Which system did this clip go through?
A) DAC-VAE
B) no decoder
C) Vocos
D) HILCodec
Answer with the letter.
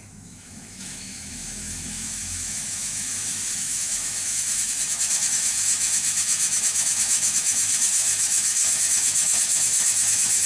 A